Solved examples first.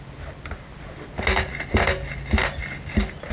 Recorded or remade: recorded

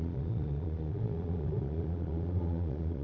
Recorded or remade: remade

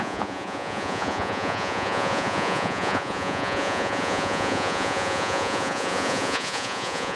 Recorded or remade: remade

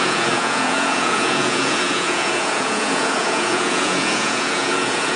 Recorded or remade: remade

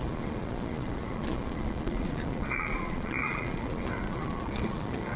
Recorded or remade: remade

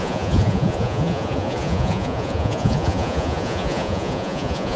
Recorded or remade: remade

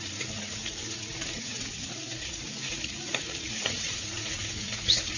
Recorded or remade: remade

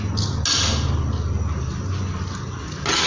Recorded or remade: recorded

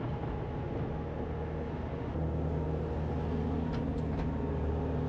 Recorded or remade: recorded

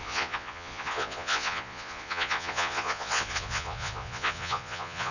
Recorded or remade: remade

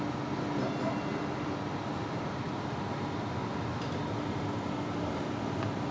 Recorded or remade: recorded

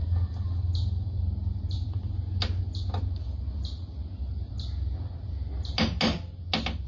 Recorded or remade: recorded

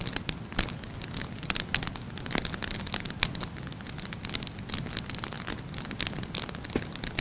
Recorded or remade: recorded